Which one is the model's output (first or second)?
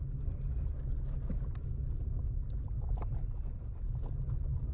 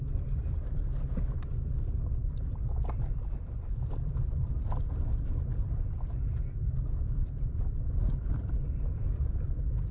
second